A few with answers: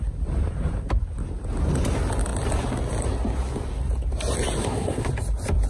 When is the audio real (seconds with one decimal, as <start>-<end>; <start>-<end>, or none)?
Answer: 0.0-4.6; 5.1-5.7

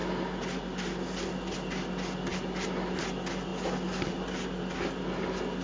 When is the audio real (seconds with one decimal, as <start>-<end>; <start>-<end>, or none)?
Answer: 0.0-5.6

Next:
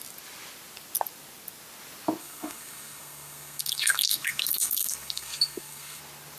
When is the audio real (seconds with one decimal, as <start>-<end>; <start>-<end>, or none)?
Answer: 0.0-2.2; 6.0-6.4

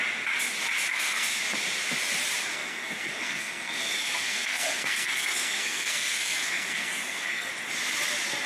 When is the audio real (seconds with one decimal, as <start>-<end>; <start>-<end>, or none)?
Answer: 0.0-0.9; 1.4-2.5; 7.5-8.5

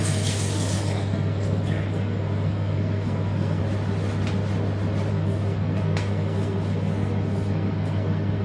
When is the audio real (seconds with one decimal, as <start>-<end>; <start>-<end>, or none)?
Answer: 3.6-5.1

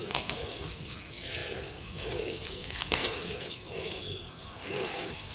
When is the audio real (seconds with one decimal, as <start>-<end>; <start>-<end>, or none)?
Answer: none